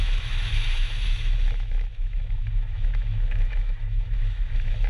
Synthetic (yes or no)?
yes